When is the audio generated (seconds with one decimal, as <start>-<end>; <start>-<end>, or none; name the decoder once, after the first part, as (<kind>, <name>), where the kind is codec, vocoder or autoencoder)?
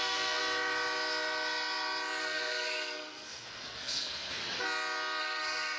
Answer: 0.0-0.4 (codec, SNAC); 2.2-4.4; 5.2-5.8